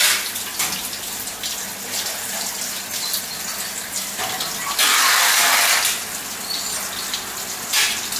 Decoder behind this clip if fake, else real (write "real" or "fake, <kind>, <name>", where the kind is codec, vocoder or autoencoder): real